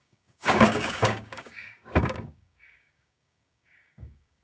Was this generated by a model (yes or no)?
yes